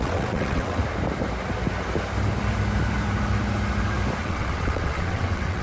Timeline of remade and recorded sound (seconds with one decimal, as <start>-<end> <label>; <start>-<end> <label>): 0.0-0.8 remade; 0.8-4.2 recorded; 4.2-5.6 remade